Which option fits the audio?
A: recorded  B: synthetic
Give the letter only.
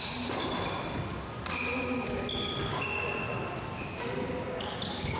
A